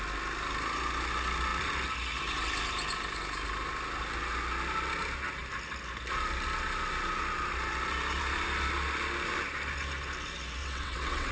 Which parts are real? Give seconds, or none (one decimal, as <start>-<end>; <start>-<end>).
0.0-10.6